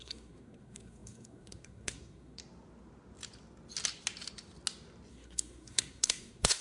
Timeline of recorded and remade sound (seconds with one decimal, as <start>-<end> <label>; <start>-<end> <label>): 0.0-2.4 remade; 2.4-5.1 recorded; 5.1-6.6 remade